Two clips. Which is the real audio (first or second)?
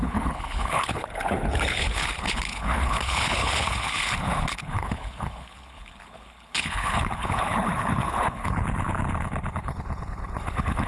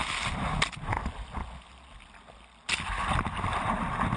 second